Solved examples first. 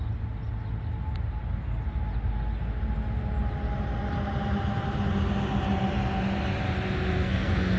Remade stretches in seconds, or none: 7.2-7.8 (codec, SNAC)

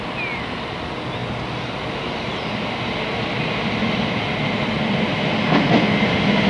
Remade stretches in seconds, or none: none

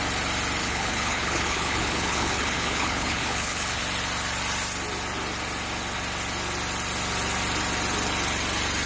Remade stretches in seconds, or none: 0.6-3.8 (codec, HILCodec)